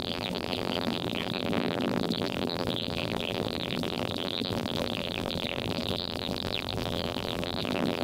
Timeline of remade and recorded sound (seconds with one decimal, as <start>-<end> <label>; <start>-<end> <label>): 0.0-8.0 remade